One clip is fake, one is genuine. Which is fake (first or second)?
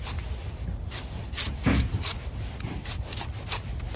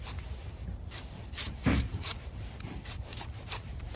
second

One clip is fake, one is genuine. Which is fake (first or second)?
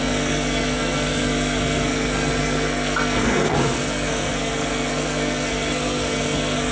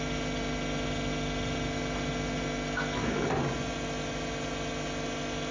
first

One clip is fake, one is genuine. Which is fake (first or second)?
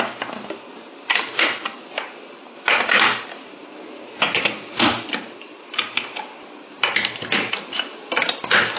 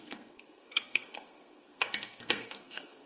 second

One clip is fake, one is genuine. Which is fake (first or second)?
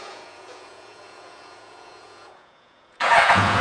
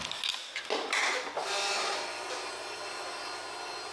first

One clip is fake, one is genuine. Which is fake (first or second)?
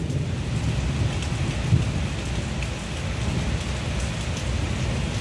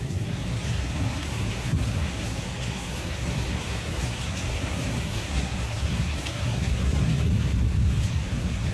second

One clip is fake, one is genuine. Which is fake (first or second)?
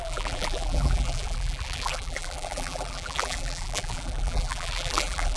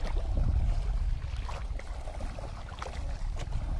first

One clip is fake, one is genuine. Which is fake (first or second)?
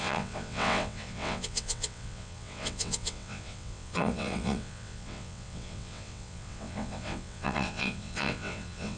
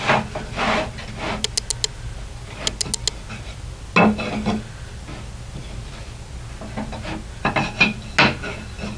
first